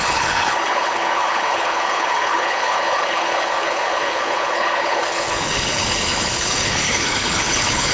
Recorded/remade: remade